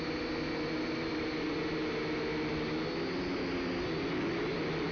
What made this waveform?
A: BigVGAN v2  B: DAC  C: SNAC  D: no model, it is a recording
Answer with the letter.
D